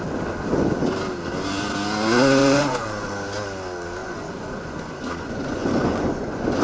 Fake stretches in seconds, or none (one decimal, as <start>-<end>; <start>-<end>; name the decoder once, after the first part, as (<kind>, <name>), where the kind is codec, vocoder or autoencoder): 2.4-3.1 (vocoder, Vocos); 4.0-6.6